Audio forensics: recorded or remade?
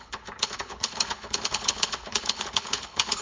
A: remade